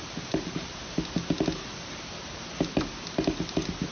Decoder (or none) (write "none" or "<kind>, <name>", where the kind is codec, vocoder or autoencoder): none